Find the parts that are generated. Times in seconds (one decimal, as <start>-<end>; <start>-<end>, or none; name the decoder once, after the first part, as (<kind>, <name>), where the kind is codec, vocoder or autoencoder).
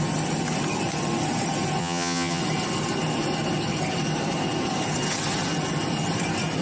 1.8-2.4 (vocoder, HiFi-GAN)